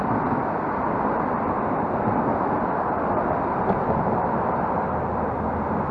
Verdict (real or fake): real